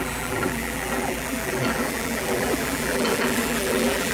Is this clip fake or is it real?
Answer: fake